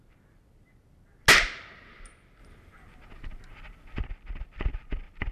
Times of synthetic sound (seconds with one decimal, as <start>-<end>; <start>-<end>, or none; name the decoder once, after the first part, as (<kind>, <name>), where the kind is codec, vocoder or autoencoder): none